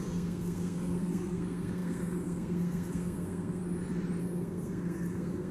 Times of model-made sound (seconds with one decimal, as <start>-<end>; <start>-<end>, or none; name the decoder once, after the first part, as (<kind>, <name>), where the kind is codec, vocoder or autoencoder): 0.0-3.6 (codec, SNAC); 4.2-5.5